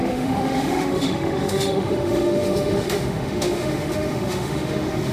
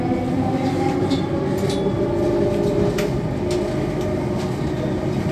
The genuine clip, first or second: second